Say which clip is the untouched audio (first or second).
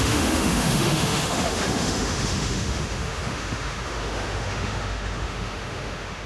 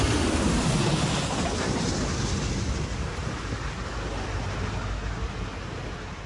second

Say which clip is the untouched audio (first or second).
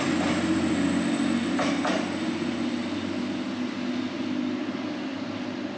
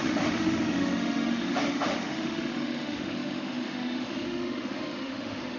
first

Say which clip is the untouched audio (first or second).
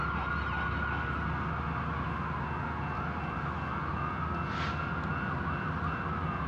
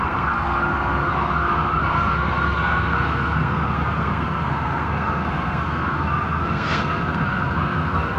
first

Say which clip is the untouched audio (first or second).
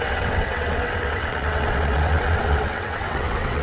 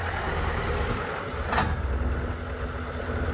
second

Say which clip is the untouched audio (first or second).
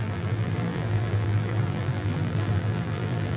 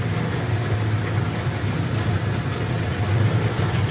second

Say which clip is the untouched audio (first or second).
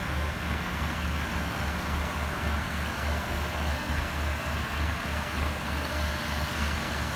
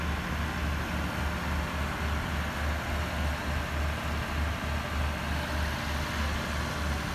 second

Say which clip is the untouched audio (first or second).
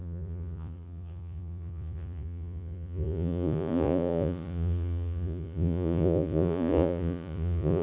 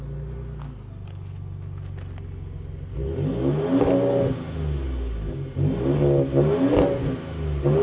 second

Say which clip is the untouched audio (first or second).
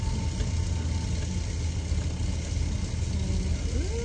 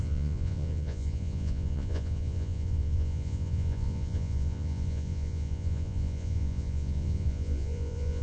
first